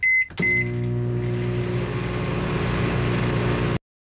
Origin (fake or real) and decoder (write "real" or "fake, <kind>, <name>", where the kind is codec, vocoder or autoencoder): real